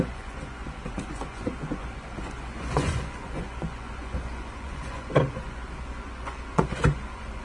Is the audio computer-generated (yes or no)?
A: yes